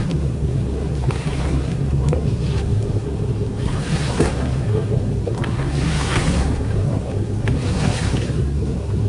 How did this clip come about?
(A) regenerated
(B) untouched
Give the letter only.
A